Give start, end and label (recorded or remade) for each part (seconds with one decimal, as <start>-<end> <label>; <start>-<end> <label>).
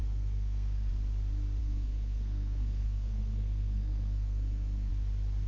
0.0-0.9 remade; 0.9-1.6 recorded; 1.6-4.9 remade; 4.9-5.5 recorded